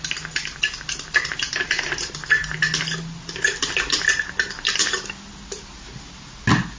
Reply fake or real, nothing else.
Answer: real